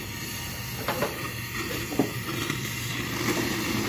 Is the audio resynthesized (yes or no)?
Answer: no